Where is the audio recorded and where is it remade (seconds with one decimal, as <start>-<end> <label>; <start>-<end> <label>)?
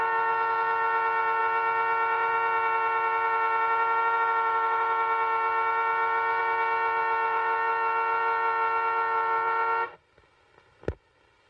0.0-11.5 recorded